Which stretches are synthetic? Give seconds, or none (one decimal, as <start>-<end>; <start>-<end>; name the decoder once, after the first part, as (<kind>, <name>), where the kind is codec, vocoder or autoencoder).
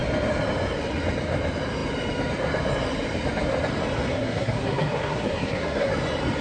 4.1-5.9 (codec, SNAC)